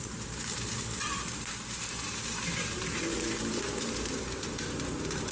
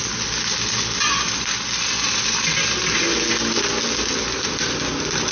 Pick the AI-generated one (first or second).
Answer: first